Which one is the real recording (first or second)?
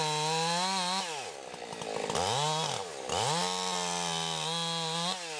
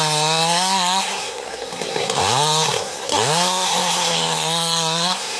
first